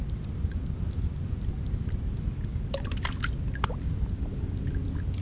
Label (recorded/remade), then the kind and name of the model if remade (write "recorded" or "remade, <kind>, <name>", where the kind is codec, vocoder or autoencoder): recorded